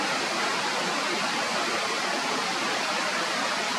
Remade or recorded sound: recorded